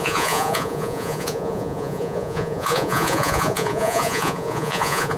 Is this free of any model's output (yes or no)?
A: no